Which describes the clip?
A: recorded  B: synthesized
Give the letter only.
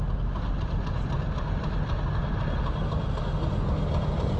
A